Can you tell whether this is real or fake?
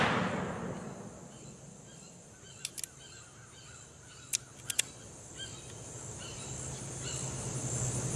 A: real